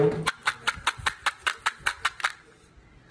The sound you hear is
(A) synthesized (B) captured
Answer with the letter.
B